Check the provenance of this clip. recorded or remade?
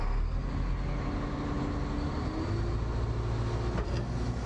recorded